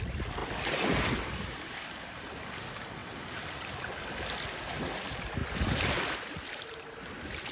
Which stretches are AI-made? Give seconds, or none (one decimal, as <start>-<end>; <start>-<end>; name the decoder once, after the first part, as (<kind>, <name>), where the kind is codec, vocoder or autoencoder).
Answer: none